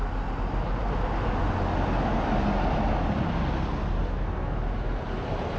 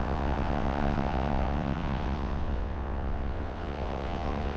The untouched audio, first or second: first